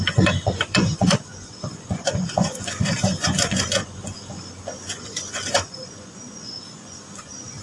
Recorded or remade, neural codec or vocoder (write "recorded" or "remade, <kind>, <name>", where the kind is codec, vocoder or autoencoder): remade, vocoder, Vocos